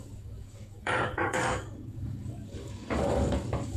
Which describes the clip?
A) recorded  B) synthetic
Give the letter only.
B